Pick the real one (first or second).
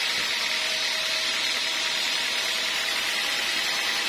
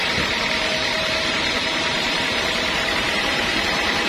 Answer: first